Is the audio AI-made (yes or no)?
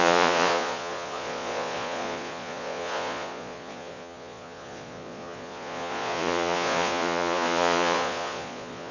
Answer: yes